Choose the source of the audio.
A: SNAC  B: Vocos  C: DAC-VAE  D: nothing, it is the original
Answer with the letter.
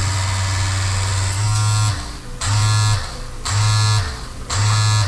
D